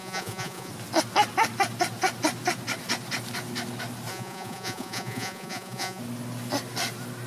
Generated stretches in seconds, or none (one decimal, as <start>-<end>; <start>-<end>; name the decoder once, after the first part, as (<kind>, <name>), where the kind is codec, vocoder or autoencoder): 0.0-0.7 (vocoder, Vocos); 4.1-6.0